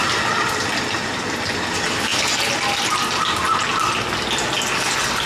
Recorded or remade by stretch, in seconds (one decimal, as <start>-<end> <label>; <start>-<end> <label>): 0.0-2.1 remade; 2.1-5.3 recorded